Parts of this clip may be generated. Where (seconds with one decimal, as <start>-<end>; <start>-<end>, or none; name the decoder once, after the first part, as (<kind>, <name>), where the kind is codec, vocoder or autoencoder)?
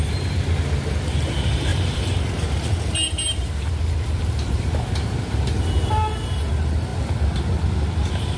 1.7-6.4 (vocoder, BigVGAN v2)